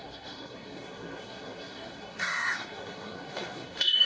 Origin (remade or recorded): remade